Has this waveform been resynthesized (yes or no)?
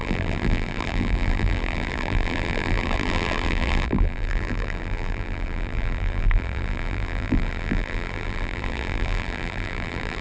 yes